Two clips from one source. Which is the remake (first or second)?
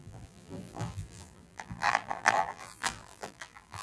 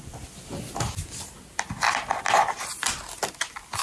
first